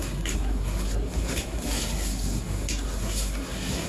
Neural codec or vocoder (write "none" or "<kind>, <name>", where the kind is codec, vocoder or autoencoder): codec, SNAC